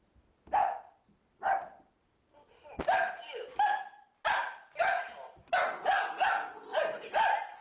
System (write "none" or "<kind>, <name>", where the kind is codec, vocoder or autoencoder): none